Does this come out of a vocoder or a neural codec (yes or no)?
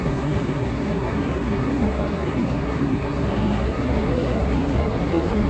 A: yes